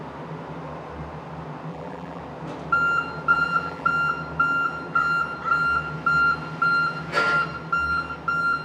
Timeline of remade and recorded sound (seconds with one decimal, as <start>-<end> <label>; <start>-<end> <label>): 0.0-1.7 recorded; 1.7-2.2 remade; 2.2-3.3 recorded; 3.3-3.9 remade; 3.9-8.6 recorded